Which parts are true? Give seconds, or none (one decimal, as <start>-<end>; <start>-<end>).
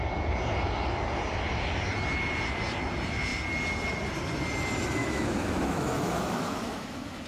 0.0-5.0